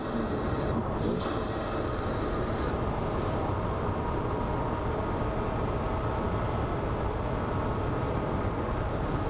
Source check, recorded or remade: recorded